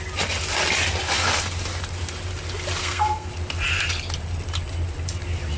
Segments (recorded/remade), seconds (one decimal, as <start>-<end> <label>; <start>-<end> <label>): 0.0-2.8 recorded; 2.8-3.3 remade; 3.3-5.6 recorded